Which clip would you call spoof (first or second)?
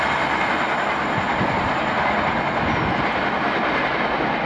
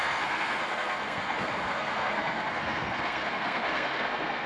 second